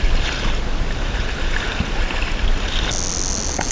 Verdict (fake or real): real